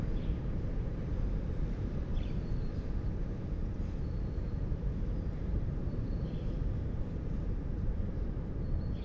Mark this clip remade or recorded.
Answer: remade